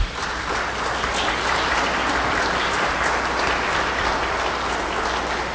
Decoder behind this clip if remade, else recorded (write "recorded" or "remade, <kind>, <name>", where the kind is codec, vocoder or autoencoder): recorded